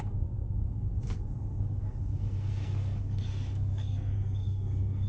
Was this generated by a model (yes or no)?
yes